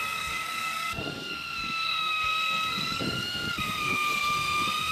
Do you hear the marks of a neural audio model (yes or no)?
yes